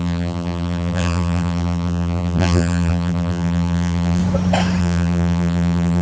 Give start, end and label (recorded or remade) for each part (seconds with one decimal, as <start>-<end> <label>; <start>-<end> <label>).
0.0-4.2 remade; 4.2-4.8 recorded; 4.8-6.0 remade